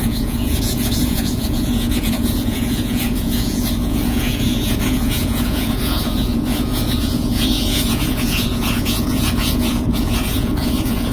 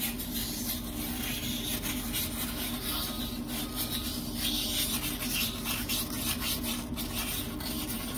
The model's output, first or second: first